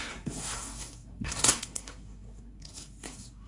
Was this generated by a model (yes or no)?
yes